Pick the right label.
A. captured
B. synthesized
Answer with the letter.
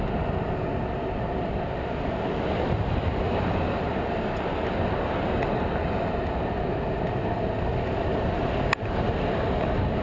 A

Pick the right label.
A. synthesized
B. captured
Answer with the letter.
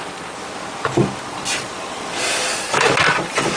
B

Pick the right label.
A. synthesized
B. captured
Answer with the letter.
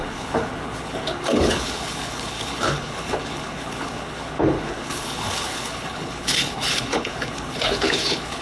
A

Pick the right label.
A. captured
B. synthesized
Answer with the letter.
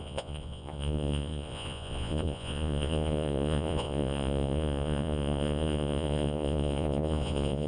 B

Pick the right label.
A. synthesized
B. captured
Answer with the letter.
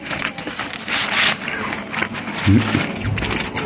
B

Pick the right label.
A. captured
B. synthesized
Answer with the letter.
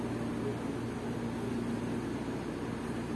A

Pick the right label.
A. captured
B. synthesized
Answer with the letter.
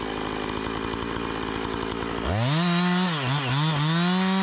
A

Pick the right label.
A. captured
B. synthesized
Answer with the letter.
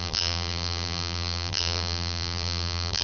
B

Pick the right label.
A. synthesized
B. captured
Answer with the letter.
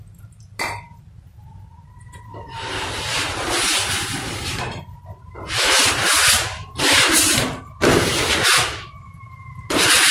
A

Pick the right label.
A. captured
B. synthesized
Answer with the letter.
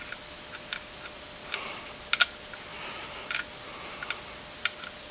A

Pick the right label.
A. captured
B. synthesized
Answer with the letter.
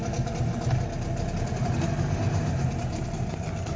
A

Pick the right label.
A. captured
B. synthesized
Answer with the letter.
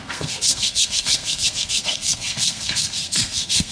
B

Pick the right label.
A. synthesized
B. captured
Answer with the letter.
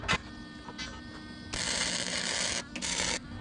B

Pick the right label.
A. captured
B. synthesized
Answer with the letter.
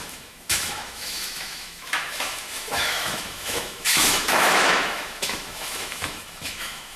B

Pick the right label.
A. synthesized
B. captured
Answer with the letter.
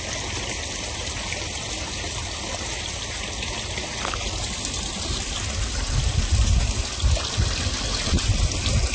B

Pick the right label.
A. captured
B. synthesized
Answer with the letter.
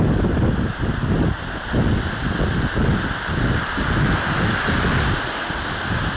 A